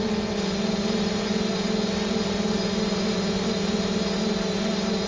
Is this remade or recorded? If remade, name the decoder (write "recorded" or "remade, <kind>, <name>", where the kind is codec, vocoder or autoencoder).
remade, vocoder, BigVGAN v2